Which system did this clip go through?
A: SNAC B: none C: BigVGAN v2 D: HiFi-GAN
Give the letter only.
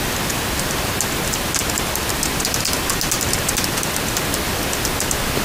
B